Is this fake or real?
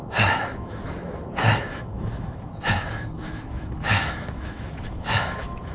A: fake